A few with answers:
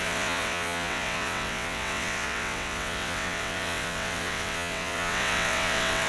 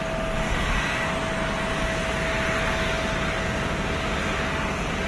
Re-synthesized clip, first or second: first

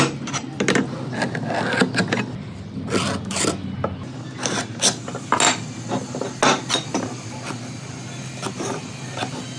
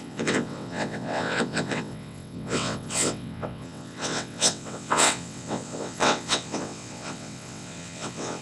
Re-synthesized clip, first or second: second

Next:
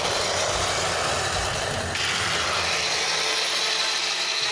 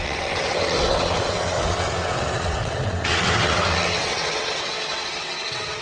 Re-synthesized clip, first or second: second